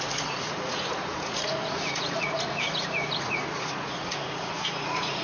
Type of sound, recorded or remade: remade